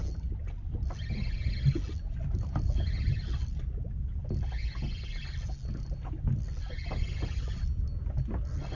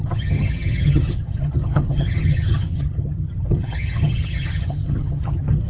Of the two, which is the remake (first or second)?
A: second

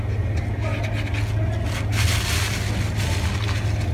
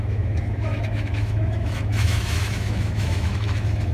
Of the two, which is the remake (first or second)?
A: second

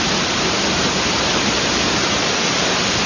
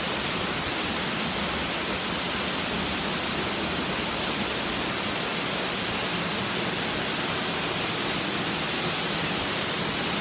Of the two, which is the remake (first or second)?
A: first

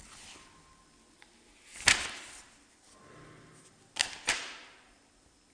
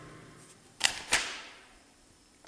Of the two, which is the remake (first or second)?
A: second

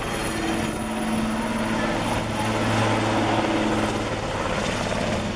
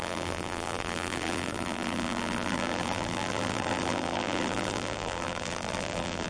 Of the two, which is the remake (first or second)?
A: second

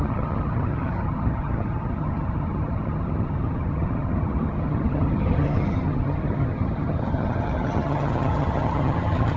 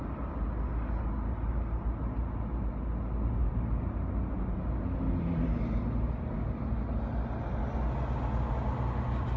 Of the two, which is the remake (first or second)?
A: first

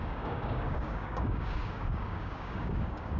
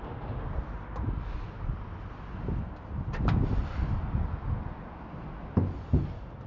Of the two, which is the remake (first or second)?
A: first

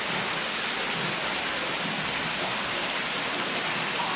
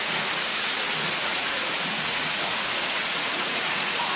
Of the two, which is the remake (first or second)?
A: second